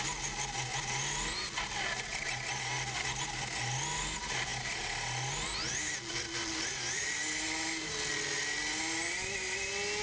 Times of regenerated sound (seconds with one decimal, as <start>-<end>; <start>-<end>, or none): none